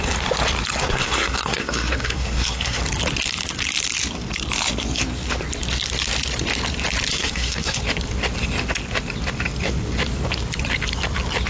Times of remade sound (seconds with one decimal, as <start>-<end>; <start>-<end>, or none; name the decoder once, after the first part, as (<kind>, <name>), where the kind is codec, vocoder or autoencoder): 0.8-2.8 (codec, SNAC); 7.1-7.8

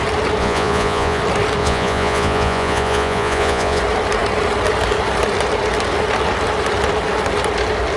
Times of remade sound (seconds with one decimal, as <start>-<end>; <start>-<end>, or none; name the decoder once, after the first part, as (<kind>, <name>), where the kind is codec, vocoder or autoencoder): 0.4-1.2 (vocoder, Vocos); 1.6-3.8

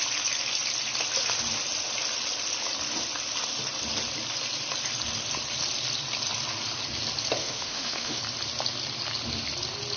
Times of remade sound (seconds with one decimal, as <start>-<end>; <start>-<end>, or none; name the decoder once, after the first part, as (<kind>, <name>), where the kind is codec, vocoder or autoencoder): 7.4-8.2 (autoencoder, DAC-VAE)

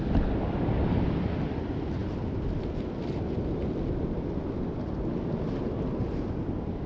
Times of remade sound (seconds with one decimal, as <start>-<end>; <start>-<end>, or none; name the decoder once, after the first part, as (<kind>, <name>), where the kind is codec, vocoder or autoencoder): none

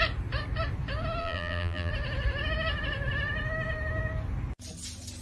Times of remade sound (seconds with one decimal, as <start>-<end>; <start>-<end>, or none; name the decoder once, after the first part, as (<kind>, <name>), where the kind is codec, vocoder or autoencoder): 1.2-1.9 (vocoder, BigVGAN v2)

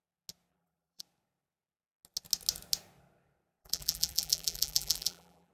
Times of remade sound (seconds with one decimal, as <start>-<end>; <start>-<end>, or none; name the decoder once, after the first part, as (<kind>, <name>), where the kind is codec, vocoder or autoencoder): 0.5-1.0 (vocoder, BigVGAN v2); 3.6-5.5